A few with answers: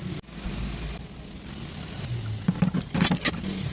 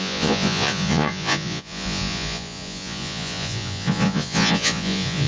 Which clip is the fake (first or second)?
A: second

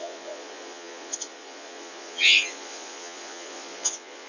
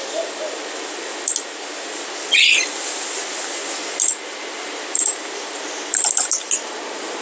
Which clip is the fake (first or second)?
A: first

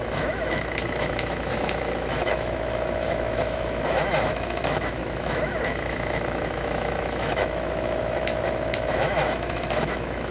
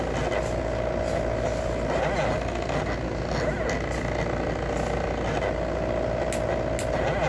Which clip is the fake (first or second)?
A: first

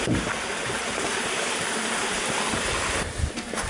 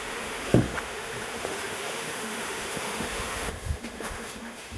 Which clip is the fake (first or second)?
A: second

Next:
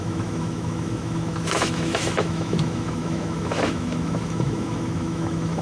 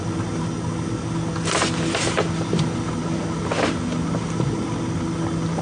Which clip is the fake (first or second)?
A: first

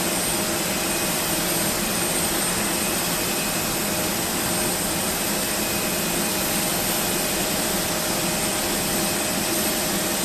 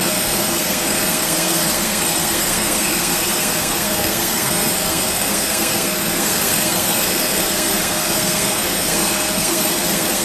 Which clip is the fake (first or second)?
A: second